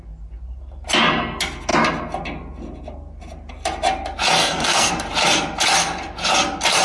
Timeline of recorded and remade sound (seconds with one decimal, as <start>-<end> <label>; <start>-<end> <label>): 0.0-4.4 recorded; 4.4-4.9 remade; 4.9-6.8 recorded